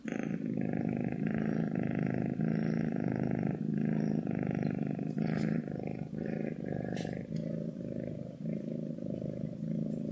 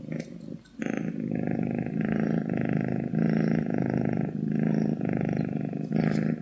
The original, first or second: second